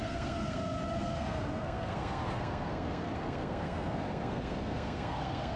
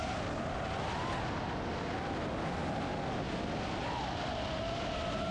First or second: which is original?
second